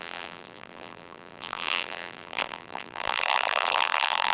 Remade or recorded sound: remade